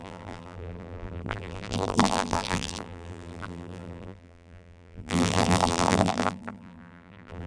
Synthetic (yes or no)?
yes